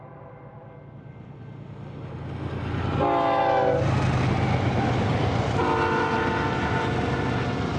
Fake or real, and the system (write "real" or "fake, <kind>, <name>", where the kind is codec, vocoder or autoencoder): real